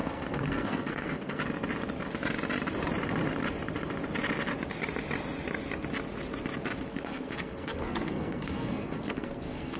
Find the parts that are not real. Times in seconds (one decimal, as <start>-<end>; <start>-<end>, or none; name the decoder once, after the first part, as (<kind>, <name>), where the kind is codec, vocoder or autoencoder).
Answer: 0.0-1.4 (codec, SNAC); 6.9-9.8